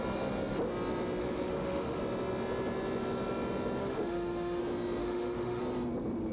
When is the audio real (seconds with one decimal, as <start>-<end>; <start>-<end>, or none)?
0.0-1.2; 2.0-3.8; 4.6-5.0; 5.6-6.3